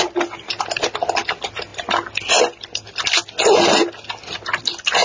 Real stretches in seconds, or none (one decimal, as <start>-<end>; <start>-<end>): 0.0-5.0